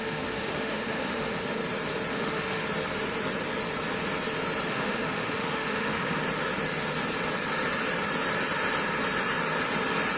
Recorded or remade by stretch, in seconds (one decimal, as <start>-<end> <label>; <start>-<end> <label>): 0.0-1.6 remade; 1.6-2.1 recorded; 2.1-2.6 remade; 2.6-4.7 recorded; 4.7-6.2 remade; 6.2-10.2 recorded